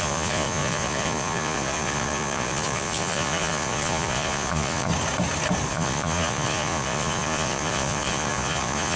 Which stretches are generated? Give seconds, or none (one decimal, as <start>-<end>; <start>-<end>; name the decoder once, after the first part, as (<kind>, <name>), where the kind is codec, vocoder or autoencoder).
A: 0.0-4.9 (vocoder, Vocos); 5.7-9.0